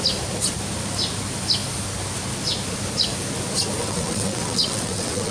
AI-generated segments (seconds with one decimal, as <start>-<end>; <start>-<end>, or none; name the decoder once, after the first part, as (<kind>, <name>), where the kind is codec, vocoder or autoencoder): 3.8-5.3 (vocoder, WaveNeXt)